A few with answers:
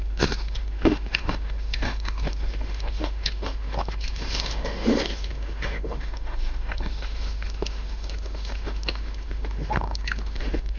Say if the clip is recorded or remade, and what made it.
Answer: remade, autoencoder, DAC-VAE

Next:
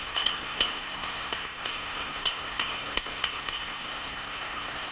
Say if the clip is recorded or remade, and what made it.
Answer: remade, codec, SNAC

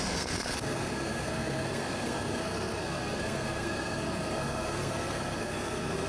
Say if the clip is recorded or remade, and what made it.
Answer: remade, codec, SNAC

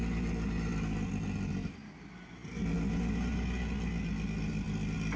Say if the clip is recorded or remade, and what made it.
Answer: recorded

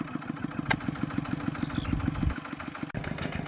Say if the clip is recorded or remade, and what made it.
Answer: recorded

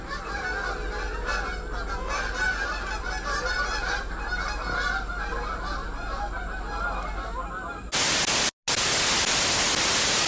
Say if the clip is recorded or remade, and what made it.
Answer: recorded